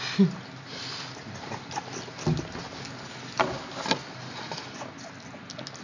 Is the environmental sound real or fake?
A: real